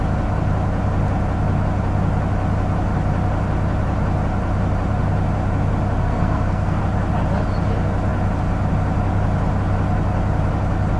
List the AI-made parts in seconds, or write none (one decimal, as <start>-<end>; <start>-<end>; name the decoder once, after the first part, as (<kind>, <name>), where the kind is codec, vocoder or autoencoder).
6.0-6.8 (codec, SNAC)